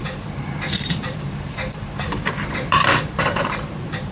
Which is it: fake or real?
fake